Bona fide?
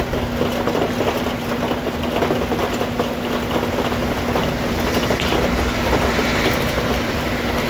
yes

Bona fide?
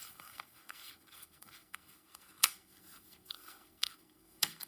no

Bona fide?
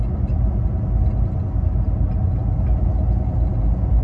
yes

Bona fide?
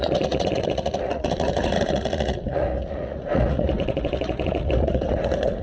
no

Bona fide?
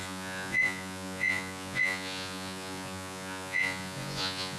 no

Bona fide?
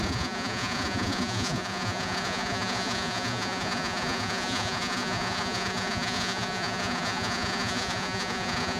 no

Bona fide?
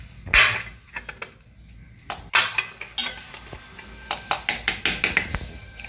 yes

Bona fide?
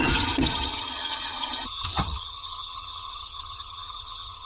no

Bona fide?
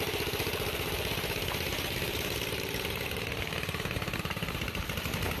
no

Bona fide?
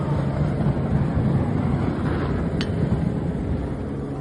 yes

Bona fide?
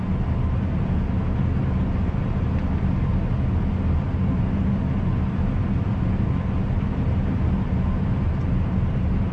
yes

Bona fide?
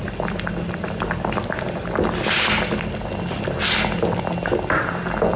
yes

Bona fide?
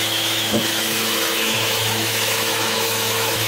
no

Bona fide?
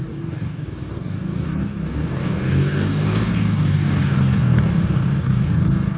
no